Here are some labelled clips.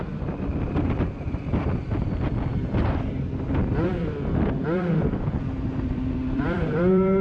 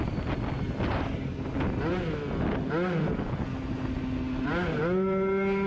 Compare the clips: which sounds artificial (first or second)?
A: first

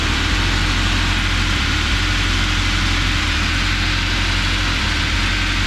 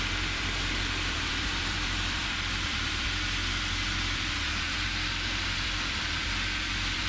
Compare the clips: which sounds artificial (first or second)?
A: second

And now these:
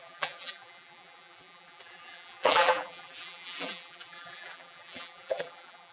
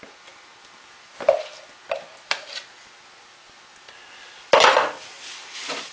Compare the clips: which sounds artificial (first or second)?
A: first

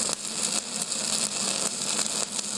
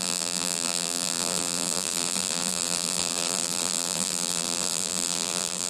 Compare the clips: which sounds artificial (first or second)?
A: second